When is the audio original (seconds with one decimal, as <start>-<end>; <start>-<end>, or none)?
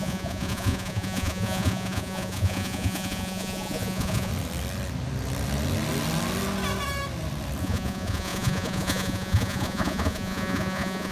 4.3-7.6